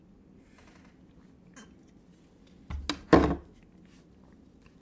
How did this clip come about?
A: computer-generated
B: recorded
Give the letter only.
B